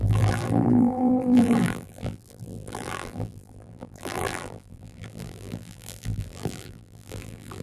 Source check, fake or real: fake